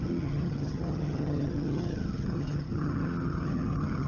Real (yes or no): no